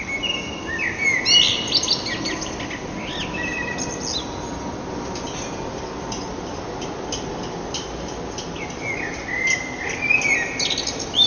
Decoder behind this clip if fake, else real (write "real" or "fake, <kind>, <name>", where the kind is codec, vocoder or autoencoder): real